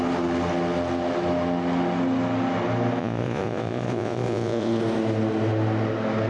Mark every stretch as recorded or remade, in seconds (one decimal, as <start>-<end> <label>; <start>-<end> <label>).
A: 0.0-3.0 recorded; 3.0-4.8 remade; 4.8-6.3 recorded